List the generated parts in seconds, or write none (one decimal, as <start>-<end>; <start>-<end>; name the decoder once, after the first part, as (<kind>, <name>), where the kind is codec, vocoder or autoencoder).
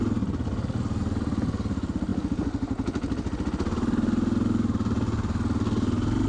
none